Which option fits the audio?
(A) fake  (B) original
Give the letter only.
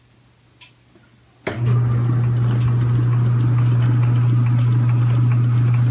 B